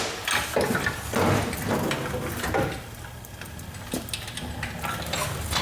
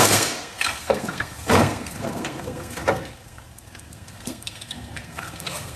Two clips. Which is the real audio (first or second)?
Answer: first